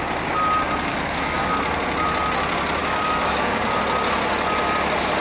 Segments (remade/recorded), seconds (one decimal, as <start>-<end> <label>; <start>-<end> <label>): 0.0-0.9 recorded; 0.9-1.5 remade; 1.5-2.8 recorded; 2.8-3.8 remade; 3.8-5.2 recorded